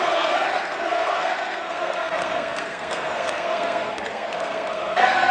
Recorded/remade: remade